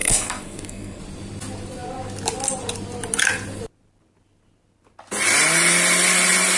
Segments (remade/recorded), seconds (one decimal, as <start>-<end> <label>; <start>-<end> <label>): 0.0-1.0 remade; 1.0-6.6 recorded